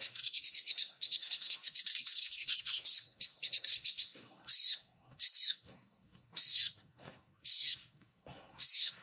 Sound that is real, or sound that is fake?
fake